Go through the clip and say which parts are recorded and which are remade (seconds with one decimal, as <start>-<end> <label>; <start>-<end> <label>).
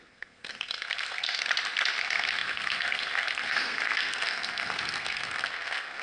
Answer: 0.0-1.4 remade; 1.4-2.0 recorded; 2.0-6.0 remade